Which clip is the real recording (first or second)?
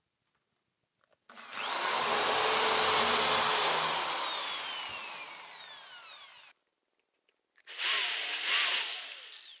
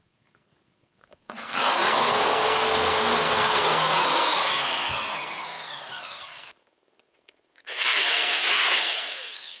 first